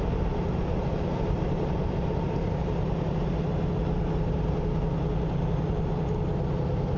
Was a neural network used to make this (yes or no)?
no